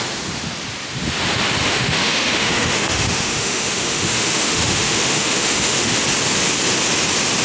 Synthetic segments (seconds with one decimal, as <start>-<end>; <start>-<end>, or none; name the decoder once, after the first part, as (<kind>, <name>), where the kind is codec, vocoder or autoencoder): 1.6-6.0 (autoencoder, DAC-VAE)